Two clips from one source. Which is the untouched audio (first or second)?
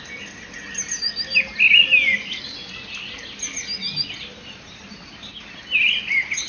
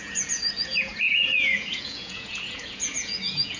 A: first